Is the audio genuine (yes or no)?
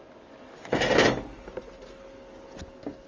yes